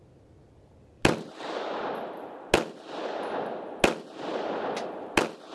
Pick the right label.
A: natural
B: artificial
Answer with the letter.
A